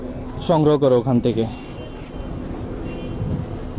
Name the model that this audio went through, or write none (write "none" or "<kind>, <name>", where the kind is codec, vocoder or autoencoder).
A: none